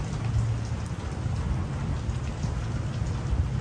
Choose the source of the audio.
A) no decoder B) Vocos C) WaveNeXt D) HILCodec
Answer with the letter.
A